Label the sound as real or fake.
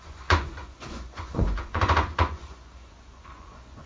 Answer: fake